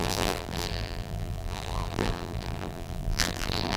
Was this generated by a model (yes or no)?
yes